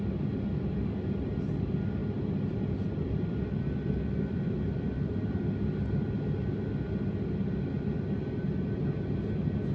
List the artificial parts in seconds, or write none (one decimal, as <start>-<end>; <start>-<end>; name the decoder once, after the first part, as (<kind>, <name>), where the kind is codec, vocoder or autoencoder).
none